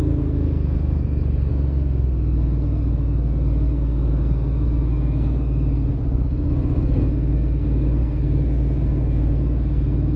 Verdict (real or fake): fake